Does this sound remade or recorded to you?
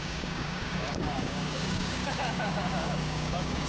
remade